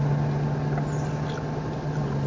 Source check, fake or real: real